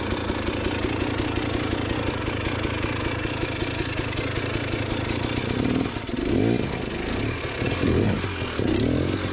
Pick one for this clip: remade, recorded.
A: recorded